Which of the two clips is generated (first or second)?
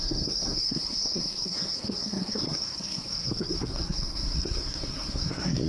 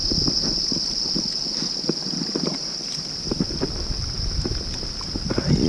first